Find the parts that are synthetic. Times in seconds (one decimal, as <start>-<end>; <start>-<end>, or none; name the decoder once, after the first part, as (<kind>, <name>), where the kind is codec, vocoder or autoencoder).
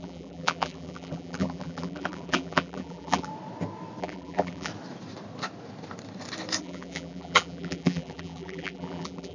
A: 0.0-3.3 (vocoder, BigVGAN v2); 4.0-4.7; 6.6-9.3